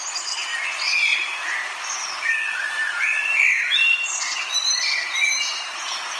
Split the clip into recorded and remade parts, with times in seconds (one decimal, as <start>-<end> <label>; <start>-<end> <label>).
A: 0.0-0.4 recorded; 0.4-4.1 remade; 4.1-4.6 recorded; 4.6-5.3 remade; 5.3-6.2 recorded